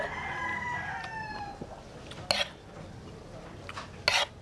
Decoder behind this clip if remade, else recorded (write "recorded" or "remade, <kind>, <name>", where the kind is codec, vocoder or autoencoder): recorded